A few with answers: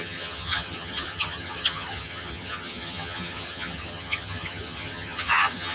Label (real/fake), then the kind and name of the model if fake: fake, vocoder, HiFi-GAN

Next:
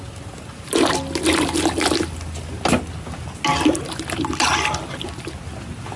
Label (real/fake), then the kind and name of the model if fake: real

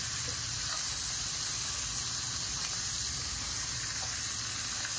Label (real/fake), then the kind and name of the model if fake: real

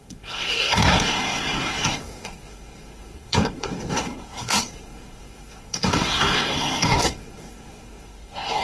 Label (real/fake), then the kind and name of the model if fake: fake, codec, SNAC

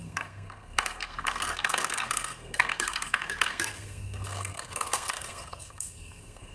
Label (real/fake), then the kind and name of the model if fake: fake, codec, SNAC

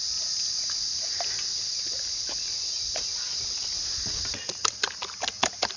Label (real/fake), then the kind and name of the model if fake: real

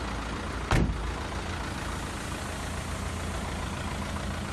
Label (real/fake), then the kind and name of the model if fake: real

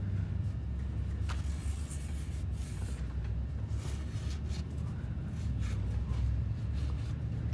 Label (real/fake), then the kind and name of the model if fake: real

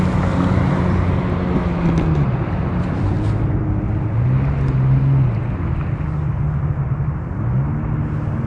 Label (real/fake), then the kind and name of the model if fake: real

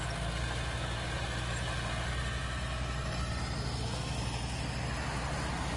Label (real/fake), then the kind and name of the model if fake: real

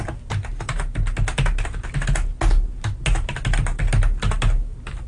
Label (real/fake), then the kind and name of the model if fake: real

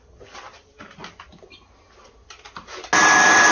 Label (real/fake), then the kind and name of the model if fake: real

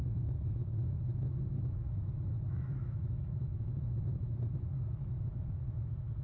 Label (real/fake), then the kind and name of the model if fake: fake, autoencoder, DAC-VAE